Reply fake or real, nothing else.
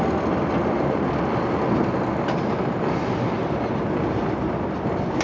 real